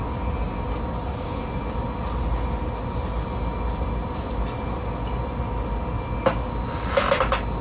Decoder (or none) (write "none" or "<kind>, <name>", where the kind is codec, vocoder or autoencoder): none